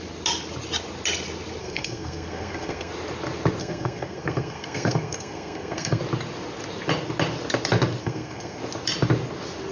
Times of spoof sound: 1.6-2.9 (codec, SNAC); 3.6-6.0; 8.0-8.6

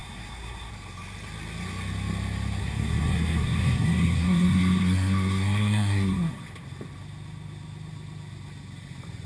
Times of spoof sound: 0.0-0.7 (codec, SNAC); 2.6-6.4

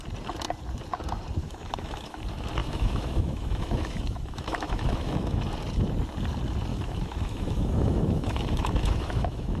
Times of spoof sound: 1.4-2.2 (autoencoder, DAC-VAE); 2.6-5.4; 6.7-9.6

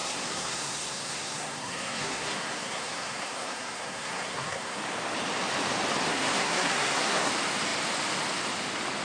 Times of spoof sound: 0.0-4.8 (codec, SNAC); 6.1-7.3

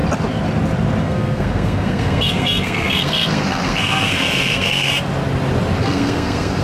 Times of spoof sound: 1.0-4.9 (codec, SNAC); 5.8-6.6